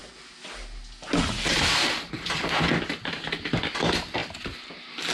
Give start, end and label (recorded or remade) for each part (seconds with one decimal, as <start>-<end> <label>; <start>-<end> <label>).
0.0-5.1 recorded